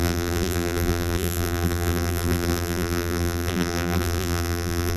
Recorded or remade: remade